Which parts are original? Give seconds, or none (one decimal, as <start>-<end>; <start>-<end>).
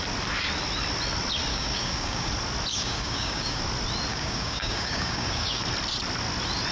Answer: 0.0-1.5; 2.3-2.7; 3.6-4.1; 5.6-6.7